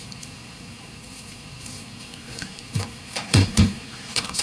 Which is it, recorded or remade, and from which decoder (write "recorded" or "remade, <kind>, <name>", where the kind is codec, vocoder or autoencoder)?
remade, codec, SNAC